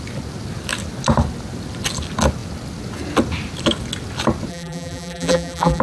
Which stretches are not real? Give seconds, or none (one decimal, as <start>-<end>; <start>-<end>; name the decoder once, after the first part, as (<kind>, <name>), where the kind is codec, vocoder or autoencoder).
4.5-5.8 (vocoder, BigVGAN v2)